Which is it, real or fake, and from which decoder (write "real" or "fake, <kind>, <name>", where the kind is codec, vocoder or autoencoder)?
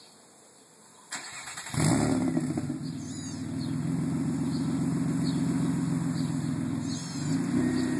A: real